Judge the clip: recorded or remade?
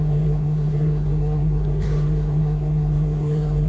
remade